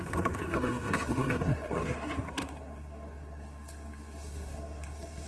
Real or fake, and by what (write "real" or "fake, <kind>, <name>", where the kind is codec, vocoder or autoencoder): fake, codec, SNAC